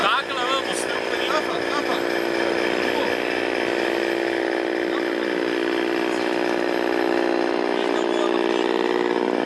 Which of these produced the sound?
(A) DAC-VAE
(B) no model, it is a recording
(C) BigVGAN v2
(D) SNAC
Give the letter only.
B